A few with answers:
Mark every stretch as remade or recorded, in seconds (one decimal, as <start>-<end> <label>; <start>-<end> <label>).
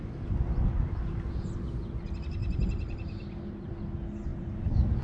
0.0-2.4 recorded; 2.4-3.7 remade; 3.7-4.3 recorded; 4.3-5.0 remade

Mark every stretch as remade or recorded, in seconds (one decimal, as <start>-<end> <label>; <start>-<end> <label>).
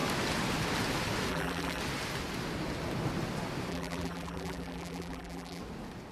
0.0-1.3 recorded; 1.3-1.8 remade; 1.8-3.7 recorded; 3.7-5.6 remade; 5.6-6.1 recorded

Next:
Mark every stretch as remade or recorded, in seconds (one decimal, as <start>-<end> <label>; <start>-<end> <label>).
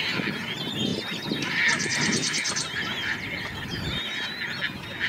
0.0-0.9 recorded; 0.9-1.5 remade; 1.5-1.9 recorded; 1.9-4.2 remade; 4.2-5.1 recorded